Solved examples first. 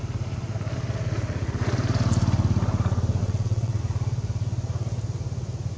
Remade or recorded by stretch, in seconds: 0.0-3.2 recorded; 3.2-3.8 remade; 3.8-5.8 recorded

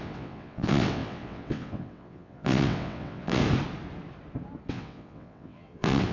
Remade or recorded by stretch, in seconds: 0.0-3.4 remade; 3.4-4.7 recorded; 4.7-6.1 remade

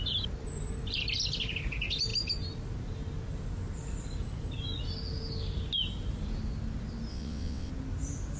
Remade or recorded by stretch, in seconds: 0.0-7.1 recorded; 7.1-7.7 remade; 7.7-8.4 recorded